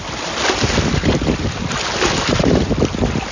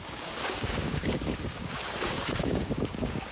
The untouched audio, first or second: first